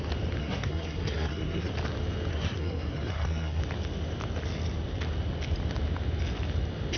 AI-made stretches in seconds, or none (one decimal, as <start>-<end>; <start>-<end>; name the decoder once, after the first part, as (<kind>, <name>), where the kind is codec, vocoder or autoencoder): 0.4-1.7 (codec, SNAC); 2.3-3.6